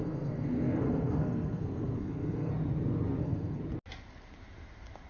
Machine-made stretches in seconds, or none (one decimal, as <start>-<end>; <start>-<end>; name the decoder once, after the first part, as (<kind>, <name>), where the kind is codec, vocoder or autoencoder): 0.0-2.5 (codec, SNAC); 3.2-3.6